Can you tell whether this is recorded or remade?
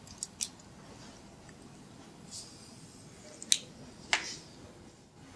recorded